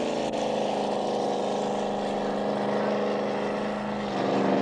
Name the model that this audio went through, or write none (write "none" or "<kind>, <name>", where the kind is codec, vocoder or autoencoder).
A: none